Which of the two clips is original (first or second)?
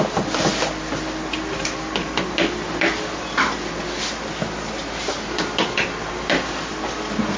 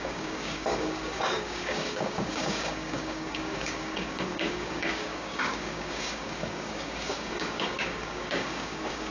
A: first